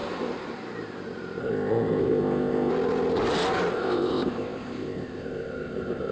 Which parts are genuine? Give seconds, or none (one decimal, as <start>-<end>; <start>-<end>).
0.0-1.4; 2.7-3.7